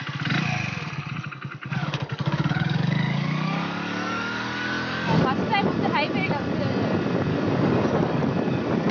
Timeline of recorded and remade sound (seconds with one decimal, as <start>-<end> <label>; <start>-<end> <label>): 0.0-1.8 recorded; 1.8-5.2 remade; 5.2-7.3 recorded; 7.3-8.3 remade; 8.3-8.9 recorded